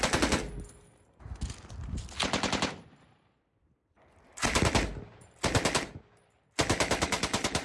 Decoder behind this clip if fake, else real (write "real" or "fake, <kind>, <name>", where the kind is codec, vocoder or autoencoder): real